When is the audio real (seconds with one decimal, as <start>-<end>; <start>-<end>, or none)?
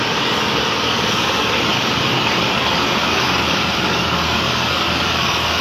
none